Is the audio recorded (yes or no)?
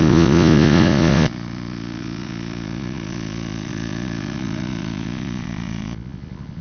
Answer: no